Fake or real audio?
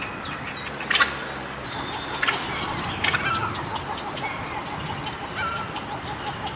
real